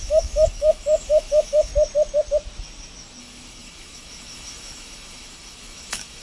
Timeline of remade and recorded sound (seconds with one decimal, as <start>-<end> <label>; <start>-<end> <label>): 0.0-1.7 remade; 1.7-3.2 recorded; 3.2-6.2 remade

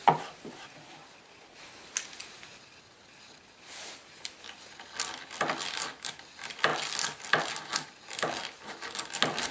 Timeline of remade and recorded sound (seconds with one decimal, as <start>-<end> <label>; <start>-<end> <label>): 0.0-1.8 remade; 1.8-6.7 recorded; 6.7-7.5 remade; 7.5-9.5 recorded

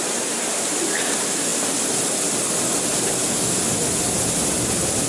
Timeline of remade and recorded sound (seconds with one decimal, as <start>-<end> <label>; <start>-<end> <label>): 0.0-5.1 recorded